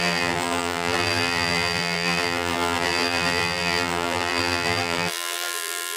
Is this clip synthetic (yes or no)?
yes